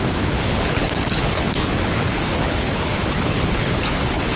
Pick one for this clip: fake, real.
fake